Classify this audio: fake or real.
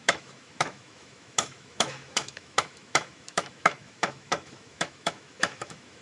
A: fake